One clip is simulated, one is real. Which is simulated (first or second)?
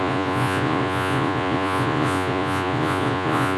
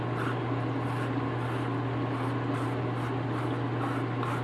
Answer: first